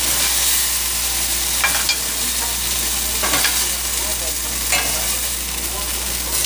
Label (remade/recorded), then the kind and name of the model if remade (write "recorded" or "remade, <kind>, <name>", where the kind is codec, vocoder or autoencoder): recorded